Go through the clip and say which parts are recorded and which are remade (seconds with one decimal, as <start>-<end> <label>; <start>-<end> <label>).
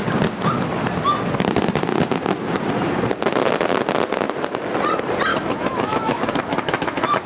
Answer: 0.0-5.3 recorded; 5.3-7.3 remade